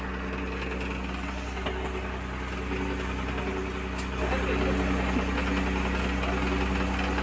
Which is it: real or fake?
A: real